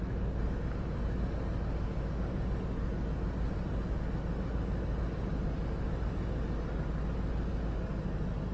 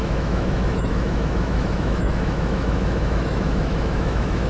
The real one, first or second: first